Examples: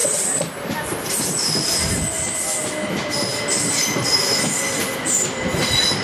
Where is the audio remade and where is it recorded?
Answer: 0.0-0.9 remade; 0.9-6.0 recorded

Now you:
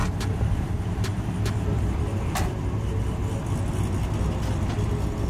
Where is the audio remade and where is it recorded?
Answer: 0.0-3.2 remade; 3.2-5.3 recorded